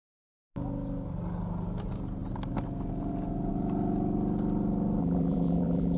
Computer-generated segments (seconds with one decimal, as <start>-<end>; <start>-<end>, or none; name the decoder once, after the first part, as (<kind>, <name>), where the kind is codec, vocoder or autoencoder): 5.0-6.0 (vocoder, BigVGAN v2)